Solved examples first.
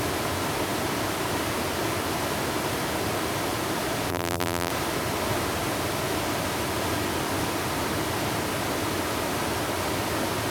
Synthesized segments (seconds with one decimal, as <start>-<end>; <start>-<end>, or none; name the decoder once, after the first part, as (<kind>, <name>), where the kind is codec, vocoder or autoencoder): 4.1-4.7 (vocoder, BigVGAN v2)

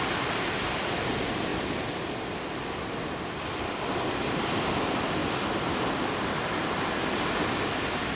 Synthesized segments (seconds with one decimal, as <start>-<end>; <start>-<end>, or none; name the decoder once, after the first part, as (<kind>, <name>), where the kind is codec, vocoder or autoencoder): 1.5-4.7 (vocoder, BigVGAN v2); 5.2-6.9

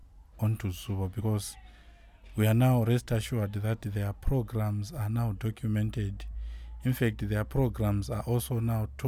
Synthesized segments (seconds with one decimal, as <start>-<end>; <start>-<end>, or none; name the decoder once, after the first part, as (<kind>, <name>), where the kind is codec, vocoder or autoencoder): none

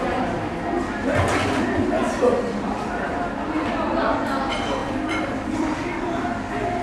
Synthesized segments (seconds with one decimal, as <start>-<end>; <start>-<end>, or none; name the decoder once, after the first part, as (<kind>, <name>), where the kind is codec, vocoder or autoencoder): 2.0-4.2 (vocoder, BigVGAN v2); 4.8-6.2

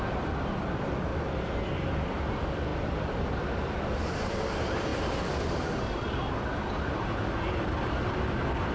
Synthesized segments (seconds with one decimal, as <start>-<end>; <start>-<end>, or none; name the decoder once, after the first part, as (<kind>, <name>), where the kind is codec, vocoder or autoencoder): 0.0-1.1 (vocoder, BigVGAN v2); 2.3-4.9; 8.1-8.7

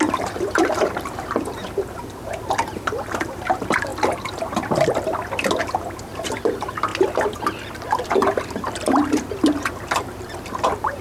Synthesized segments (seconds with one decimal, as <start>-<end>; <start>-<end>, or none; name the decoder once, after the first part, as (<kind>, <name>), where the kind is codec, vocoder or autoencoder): 0.0-3.9 (vocoder, BigVGAN v2); 6.0-6.9; 10.0-11.0